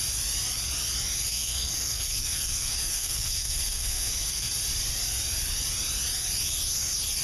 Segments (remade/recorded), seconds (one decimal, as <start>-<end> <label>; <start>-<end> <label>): 0.0-1.3 recorded; 1.3-4.5 remade; 4.5-7.2 recorded